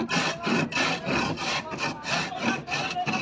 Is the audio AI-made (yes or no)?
no